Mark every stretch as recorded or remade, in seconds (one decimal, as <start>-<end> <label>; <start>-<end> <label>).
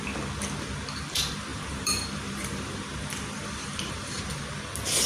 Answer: 0.0-1.5 recorded; 1.5-4.6 remade; 4.6-5.1 recorded